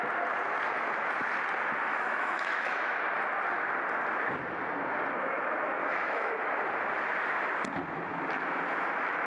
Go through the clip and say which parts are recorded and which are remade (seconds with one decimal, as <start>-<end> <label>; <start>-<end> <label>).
0.0-1.9 recorded; 1.9-3.0 remade; 3.0-5.8 recorded; 5.8-6.3 remade; 6.3-9.3 recorded